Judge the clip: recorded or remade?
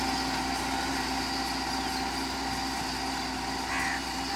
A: recorded